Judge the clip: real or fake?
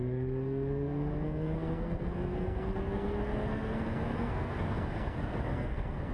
fake